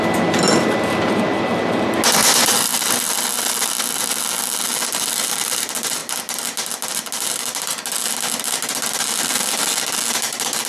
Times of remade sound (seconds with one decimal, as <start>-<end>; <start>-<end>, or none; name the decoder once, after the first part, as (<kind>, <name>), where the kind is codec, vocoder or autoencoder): none